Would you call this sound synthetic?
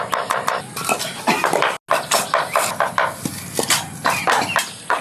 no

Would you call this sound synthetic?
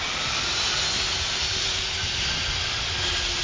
yes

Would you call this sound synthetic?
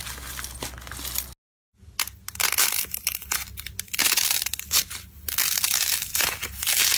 no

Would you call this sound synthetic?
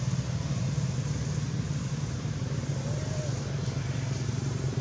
no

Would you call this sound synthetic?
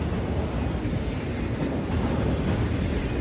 no